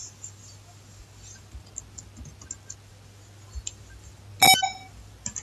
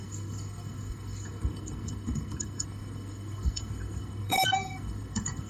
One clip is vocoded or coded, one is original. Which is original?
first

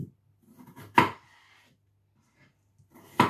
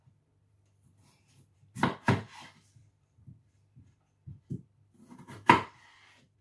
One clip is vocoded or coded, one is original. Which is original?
first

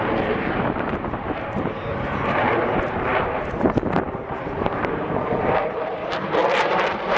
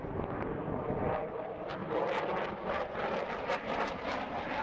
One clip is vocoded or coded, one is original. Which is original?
second